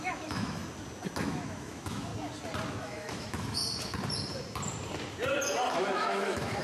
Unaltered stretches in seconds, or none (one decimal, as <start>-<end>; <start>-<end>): 0.6-1.2; 2.1-2.7; 3.6-5.8